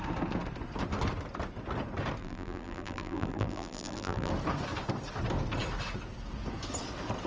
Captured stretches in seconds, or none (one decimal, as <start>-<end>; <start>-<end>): 0.0-2.2; 4.3-7.3